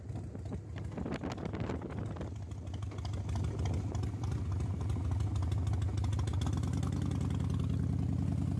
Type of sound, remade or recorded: recorded